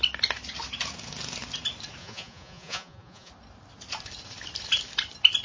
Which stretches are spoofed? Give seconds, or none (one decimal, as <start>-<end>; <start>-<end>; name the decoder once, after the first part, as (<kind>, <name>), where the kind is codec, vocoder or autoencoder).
2.0-3.3 (vocoder, Vocos)